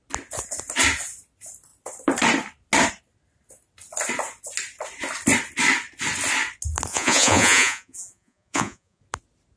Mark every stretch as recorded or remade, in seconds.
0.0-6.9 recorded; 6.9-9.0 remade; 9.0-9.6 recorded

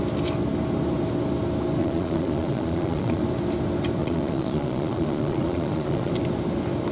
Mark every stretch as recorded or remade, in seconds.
0.0-1.8 recorded; 1.8-3.2 remade; 3.2-4.0 recorded; 4.0-6.1 remade; 6.1-6.9 recorded

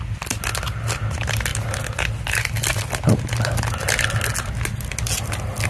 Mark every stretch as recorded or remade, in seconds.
0.0-5.7 recorded